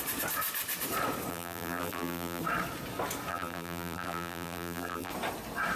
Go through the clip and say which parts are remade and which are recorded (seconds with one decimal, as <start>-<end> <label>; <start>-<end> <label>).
0.0-1.3 recorded; 1.3-2.4 remade; 2.4-3.3 recorded; 3.3-5.1 remade; 5.1-5.8 recorded